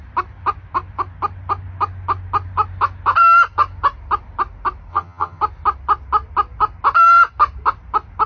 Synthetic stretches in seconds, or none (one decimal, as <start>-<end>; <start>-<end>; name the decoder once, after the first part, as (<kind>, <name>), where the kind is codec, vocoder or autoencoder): 4.9-5.4 (vocoder, HiFi-GAN)